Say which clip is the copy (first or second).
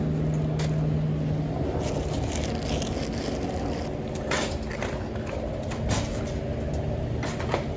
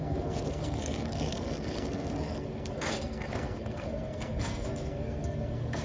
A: second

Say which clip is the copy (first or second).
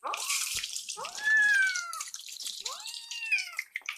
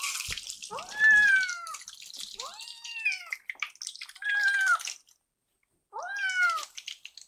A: first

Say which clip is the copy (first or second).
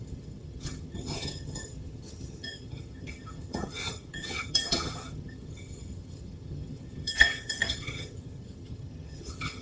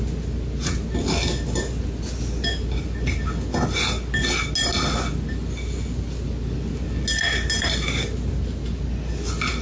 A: first